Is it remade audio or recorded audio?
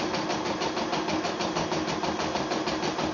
recorded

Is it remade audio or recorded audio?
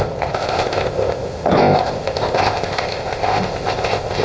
remade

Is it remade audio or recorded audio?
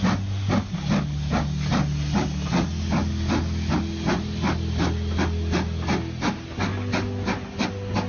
recorded